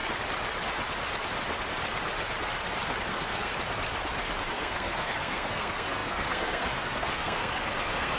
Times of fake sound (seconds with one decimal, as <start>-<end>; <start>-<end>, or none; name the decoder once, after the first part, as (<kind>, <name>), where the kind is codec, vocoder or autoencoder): 3.1-3.5 (codec, SNAC); 4.5-8.2

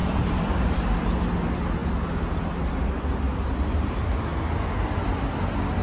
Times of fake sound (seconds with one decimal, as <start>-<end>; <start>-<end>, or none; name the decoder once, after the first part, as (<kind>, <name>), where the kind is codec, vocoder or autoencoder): 0.0-0.8 (vocoder, BigVGAN v2); 3.3-4.1

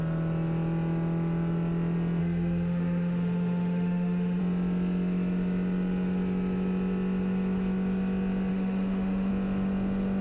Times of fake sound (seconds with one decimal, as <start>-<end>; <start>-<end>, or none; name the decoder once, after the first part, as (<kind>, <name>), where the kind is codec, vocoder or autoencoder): 2.2-4.4 (autoencoder, DAC-VAE); 8.5-9.3

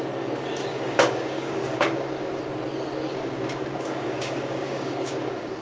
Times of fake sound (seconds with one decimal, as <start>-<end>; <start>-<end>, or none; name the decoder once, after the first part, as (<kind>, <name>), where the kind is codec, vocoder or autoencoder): 0.7-2.4 (codec, DAC); 3.1-5.6

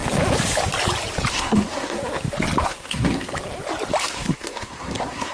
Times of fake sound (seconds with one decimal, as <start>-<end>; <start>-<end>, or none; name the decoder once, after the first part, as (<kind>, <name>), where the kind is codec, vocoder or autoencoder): 1.3-2.0 (codec, SNAC); 2.6-3.3; 4.0-5.3

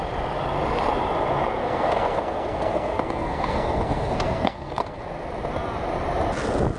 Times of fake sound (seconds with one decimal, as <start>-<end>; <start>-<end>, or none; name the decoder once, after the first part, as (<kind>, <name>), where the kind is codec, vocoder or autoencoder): 1.6-5.0 (codec, SNAC)

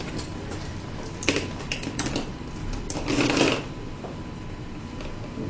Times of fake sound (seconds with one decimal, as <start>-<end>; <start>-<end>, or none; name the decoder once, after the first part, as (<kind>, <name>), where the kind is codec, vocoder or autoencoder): none

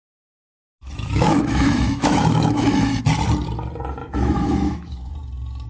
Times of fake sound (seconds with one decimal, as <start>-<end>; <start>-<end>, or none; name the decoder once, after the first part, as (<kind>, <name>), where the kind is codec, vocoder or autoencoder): 0.0-3.0 (autoencoder, DAC-VAE); 4.0-5.1